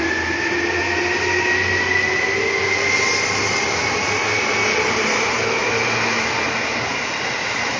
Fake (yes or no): no